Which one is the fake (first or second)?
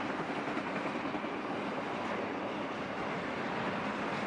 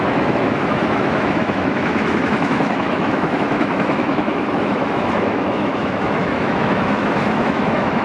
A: second